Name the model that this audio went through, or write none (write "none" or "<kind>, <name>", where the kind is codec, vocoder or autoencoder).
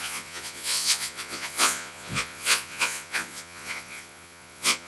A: vocoder, Vocos